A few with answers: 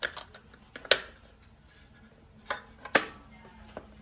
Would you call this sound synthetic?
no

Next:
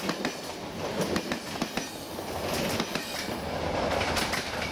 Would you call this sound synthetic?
no